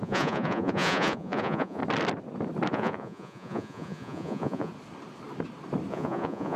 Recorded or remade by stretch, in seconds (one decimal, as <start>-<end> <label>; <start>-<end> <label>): 0.0-1.8 remade; 1.8-2.7 recorded; 2.7-4.7 remade; 4.7-5.9 recorded; 5.9-6.6 remade